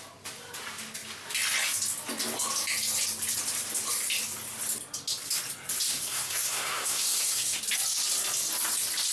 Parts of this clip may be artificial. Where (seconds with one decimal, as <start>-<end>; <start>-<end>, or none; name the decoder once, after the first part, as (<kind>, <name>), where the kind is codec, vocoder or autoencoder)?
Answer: 5.9-7.6 (codec, SNAC)